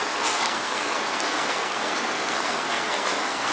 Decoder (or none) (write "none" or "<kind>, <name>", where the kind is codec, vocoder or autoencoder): codec, SNAC